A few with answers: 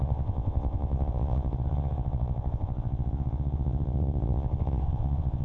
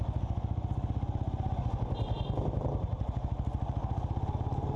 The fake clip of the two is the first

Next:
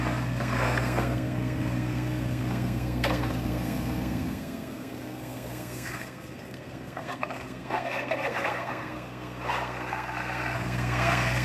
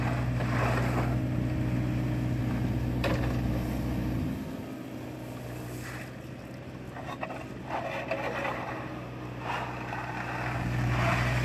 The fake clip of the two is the first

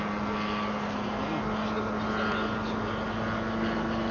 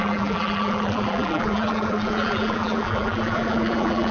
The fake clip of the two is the second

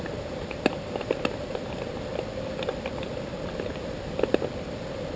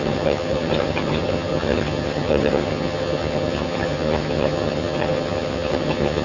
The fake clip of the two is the second